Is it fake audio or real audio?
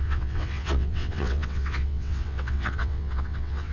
fake